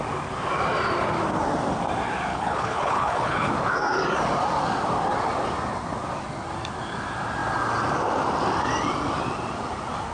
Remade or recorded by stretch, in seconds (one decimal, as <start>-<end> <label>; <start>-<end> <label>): 0.0-2.3 recorded; 2.3-3.5 remade; 3.5-10.1 recorded